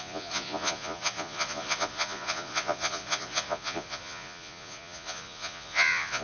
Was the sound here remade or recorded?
remade